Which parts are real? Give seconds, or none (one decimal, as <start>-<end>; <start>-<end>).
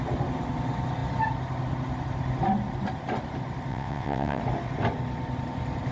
0.0-3.7; 4.4-5.9